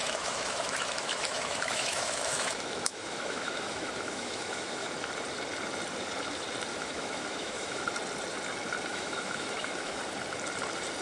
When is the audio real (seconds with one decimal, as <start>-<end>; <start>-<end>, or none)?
4.9-6.7; 7.8-8.9; 10.0-11.0